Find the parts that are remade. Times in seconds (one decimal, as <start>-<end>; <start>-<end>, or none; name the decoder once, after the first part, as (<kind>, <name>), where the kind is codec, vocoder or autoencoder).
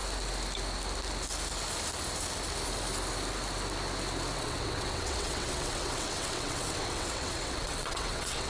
4.4-8.5 (vocoder, WaveNeXt)